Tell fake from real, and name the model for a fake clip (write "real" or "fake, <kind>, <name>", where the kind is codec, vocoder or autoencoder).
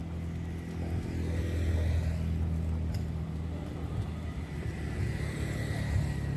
real